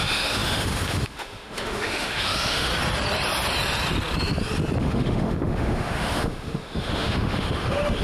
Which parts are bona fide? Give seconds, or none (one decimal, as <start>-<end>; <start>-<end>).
2.7-4.8